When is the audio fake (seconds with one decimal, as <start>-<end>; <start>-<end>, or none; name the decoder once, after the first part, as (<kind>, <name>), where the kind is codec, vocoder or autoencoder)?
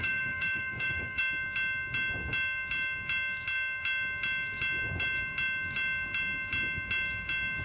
0.0-1.2 (autoencoder, DAC-VAE)